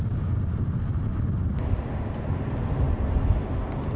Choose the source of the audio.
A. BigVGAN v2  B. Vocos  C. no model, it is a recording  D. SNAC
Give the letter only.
C